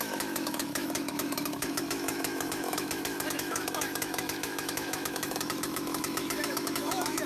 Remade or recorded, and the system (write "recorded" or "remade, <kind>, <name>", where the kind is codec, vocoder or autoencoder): remade, autoencoder, DAC-VAE